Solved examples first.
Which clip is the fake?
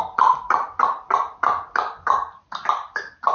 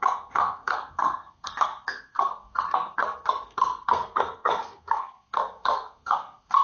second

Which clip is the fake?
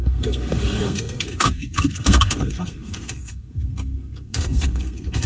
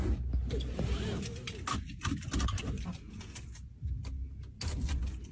first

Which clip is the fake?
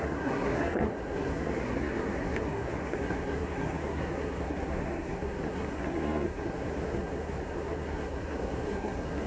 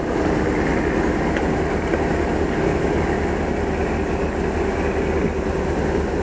first